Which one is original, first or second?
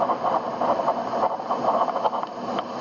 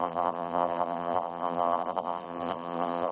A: first